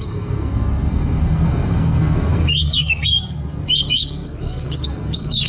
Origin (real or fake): fake